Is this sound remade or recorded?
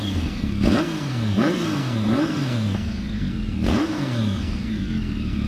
remade